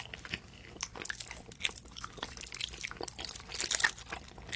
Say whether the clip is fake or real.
real